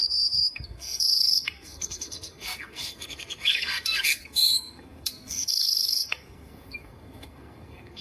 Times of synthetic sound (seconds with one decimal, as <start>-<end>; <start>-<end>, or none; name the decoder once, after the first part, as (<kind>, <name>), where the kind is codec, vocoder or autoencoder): 0.0-8.0 (codec, SNAC)